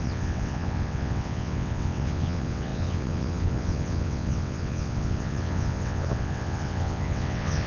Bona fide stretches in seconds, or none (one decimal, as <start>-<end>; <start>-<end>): none